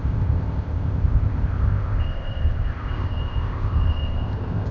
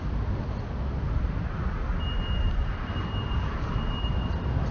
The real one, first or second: second